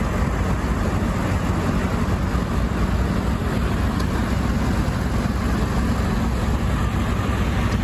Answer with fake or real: real